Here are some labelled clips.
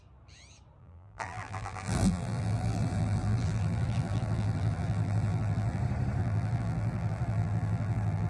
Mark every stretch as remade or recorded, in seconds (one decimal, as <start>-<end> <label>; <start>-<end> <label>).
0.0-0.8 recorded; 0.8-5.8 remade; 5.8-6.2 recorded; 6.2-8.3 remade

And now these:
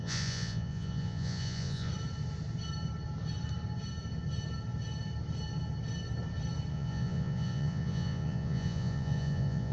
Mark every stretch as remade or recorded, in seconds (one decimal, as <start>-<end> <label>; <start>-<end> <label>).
0.0-1.9 remade; 1.9-6.7 recorded; 6.7-9.7 remade

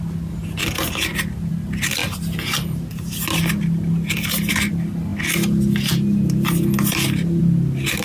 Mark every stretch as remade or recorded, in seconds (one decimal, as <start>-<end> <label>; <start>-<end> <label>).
0.0-8.0 recorded